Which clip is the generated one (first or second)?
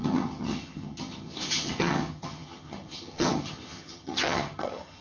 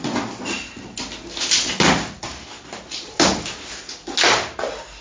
first